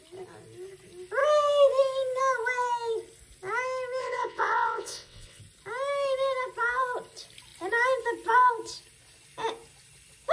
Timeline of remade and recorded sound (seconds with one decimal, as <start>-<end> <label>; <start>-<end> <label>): 0.0-4.0 recorded; 4.0-5.4 remade; 5.4-10.3 recorded